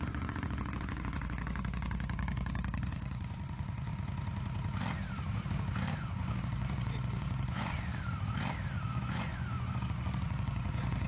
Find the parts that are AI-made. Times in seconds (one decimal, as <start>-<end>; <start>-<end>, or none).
0.0-3.9; 6.0-7.9; 8.9-11.1